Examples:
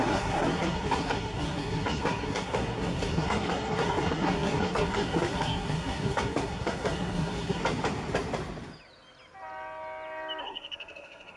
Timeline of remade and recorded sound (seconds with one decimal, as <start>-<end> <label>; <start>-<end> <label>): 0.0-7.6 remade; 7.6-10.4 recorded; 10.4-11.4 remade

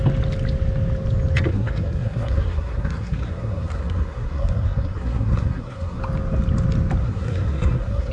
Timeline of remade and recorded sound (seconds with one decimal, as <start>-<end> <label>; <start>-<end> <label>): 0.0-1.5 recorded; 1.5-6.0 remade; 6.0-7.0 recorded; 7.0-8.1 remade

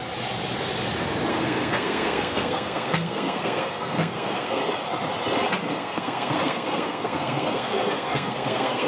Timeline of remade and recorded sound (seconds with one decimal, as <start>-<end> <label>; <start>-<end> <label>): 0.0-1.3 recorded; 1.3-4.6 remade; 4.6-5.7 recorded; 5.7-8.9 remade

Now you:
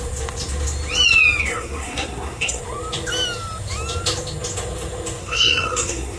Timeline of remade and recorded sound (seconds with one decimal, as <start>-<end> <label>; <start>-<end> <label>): 0.0-1.4 recorded; 1.4-2.6 remade; 2.6-5.2 recorded; 5.2-6.2 remade

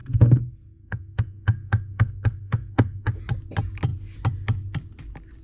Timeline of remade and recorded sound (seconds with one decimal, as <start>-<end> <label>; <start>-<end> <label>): 0.0-3.2 remade; 3.2-5.4 recorded